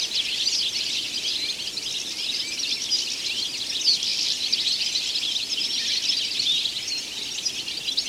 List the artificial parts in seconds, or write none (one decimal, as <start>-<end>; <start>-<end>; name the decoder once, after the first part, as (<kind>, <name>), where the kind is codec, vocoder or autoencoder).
4.1-5.6 (vocoder, BigVGAN v2)